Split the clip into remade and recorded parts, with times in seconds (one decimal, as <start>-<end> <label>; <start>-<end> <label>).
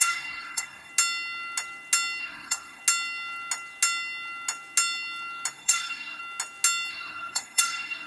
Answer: 0.0-0.9 remade; 0.9-2.2 recorded; 2.2-2.8 remade; 2.8-5.5 recorded; 5.5-6.2 remade; 6.2-6.9 recorded; 6.9-8.1 remade